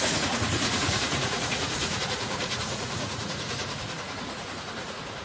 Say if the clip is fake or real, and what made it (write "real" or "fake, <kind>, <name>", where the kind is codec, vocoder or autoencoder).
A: fake, vocoder, Vocos